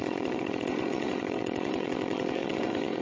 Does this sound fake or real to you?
fake